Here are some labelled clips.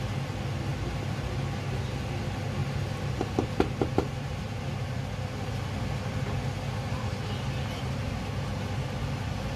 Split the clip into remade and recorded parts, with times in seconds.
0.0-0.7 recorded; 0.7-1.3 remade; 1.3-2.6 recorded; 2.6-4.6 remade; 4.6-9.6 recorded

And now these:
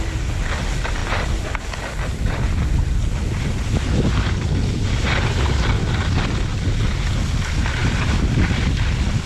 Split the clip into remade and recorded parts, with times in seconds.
0.0-7.8 recorded; 7.8-8.9 remade; 8.9-9.3 recorded

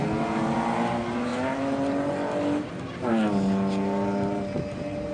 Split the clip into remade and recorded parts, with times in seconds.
0.0-5.1 recorded